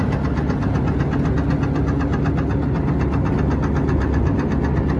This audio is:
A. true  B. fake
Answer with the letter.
A